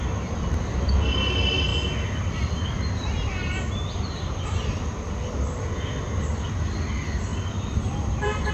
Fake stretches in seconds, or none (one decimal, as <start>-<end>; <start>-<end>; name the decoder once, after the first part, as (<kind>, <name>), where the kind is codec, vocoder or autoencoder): 7.3-8.5 (vocoder, BigVGAN v2)